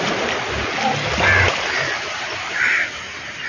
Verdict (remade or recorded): recorded